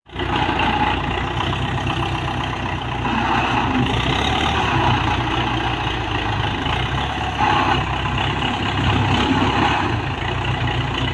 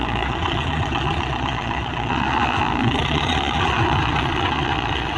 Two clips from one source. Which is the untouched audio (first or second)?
first